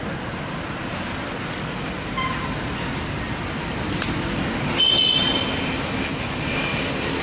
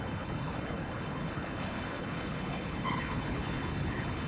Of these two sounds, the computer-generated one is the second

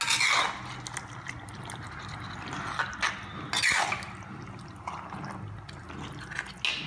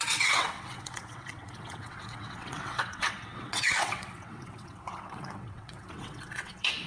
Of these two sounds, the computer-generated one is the second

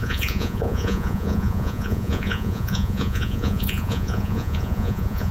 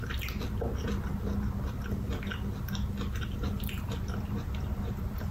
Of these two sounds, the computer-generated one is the first